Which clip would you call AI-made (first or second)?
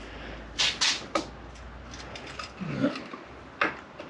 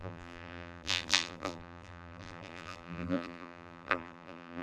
second